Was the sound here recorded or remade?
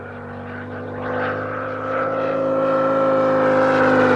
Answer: recorded